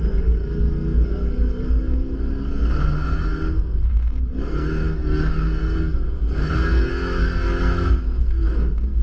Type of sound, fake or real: fake